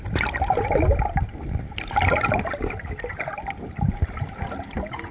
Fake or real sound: real